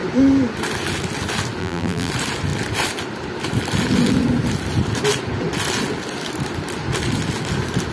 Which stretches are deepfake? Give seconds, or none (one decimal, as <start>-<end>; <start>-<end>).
1.6-2.1